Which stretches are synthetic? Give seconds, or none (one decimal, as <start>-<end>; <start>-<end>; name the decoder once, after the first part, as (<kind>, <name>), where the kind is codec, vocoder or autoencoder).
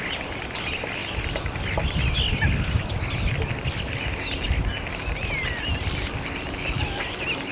none